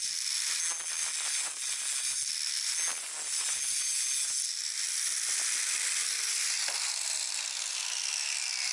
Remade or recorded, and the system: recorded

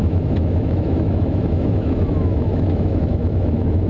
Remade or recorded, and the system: remade, autoencoder, DAC-VAE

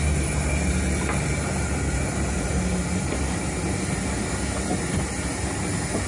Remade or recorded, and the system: recorded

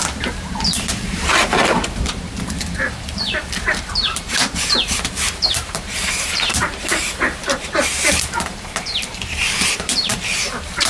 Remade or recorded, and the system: remade, vocoder, BigVGAN v2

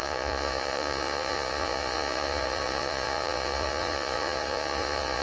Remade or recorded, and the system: remade, vocoder, Vocos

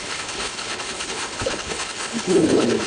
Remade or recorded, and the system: remade, codec, HILCodec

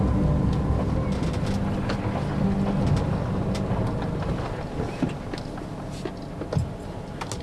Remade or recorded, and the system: recorded